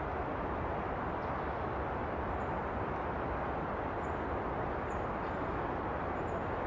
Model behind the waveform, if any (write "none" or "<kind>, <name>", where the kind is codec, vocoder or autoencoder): none